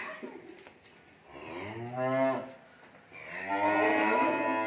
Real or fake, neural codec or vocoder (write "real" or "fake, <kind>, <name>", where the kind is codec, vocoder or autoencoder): real